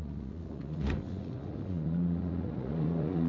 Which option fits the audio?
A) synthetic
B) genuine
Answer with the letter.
A